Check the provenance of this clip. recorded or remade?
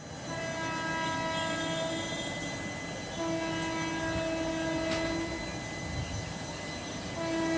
recorded